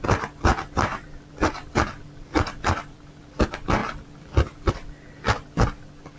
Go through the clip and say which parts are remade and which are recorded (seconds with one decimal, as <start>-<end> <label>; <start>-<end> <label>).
0.0-0.5 recorded; 0.5-3.4 remade; 3.4-3.8 recorded; 3.8-4.7 remade; 4.7-6.2 recorded